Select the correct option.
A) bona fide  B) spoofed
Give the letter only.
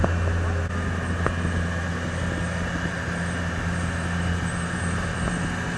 A